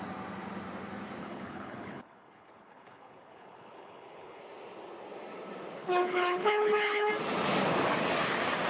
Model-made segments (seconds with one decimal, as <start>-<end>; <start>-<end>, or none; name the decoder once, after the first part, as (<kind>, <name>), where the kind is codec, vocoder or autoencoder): 1.2-4.4 (codec, HILCodec); 5.8-7.1